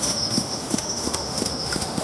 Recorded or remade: remade